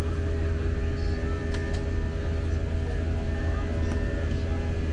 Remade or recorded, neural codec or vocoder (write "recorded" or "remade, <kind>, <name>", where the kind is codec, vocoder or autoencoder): recorded